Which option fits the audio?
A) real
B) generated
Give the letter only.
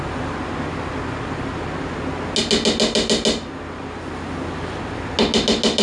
A